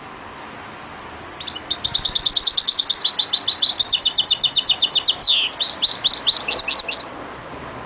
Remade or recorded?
recorded